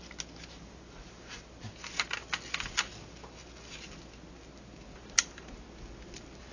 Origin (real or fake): real